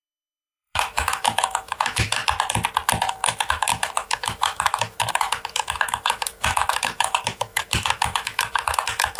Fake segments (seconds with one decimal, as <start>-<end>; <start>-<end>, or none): 0.0-2.2; 3.1-9.2